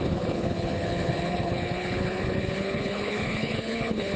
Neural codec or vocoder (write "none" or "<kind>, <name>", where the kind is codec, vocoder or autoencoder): codec, HILCodec